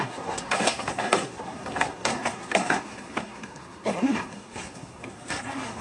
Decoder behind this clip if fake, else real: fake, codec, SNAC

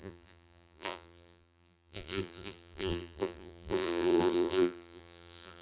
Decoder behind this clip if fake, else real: fake, vocoder, BigVGAN v2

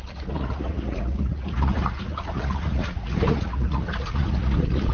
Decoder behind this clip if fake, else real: fake, vocoder, Vocos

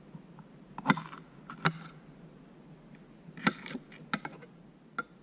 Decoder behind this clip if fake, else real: real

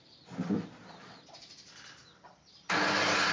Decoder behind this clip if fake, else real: real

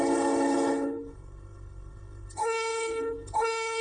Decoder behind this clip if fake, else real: fake, codec, HILCodec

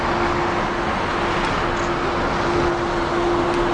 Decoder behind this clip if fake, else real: real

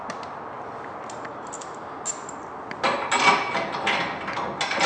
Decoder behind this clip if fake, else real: real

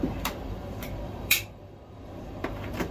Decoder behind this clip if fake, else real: fake, vocoder, BigVGAN v2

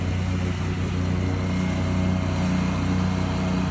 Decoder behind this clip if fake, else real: real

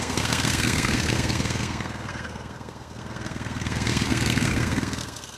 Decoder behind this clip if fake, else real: fake, codec, SNAC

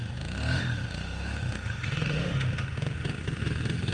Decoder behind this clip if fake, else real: fake, autoencoder, DAC-VAE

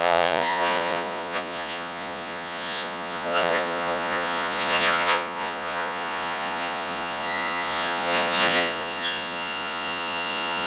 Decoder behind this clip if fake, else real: fake, vocoder, Vocos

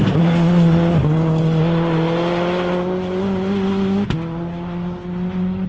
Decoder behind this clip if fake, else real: real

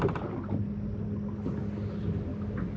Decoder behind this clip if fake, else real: real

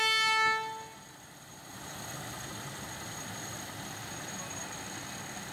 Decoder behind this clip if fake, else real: real